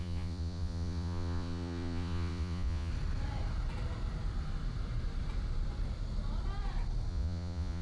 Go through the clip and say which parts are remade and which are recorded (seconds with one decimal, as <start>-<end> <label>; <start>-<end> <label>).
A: 0.0-2.9 remade; 2.9-7.1 recorded; 7.1-7.8 remade